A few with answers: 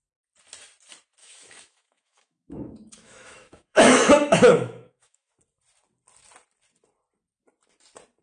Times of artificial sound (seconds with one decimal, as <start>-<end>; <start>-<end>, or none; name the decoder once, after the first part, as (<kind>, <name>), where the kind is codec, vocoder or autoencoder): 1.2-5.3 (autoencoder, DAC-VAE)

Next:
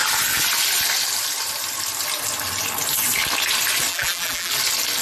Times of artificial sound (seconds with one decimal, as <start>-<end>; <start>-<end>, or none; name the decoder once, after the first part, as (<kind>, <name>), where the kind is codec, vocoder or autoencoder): 3.9-4.5 (vocoder, BigVGAN v2)

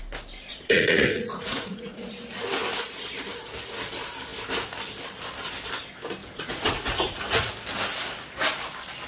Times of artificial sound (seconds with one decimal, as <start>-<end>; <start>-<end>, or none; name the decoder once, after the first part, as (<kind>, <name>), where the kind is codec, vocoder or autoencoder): 0.5-2.1 (vocoder, Vocos); 6.2-7.5